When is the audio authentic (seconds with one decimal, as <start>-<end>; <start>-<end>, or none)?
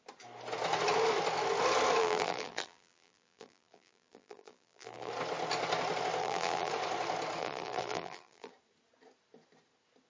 0.0-2.0; 5.1-6.2; 6.7-7.4; 8.5-10.1